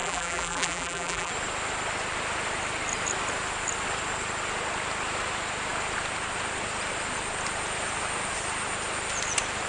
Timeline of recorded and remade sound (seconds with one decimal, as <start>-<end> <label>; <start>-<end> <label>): 0.0-1.3 remade; 1.3-9.7 recorded